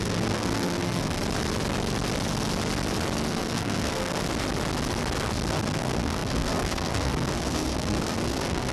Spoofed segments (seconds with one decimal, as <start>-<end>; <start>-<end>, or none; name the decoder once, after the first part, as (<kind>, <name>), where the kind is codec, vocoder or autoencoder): 0.0-1.2 (codec, SNAC); 3.3-4.2; 5.5-8.7